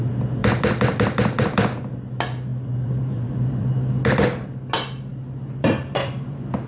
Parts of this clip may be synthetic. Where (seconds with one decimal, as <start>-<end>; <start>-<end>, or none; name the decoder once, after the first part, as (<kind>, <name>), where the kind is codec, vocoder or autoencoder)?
0.4-1.8 (vocoder, BigVGAN v2); 2.5-3.7; 5.1-6.7